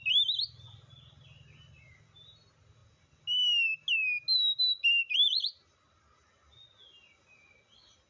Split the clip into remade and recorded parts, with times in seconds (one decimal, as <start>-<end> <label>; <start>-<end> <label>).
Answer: 0.0-5.0 recorded; 5.0-6.0 remade; 6.0-8.1 recorded